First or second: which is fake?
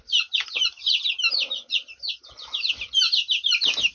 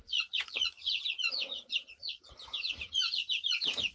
second